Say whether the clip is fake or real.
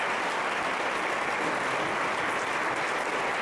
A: real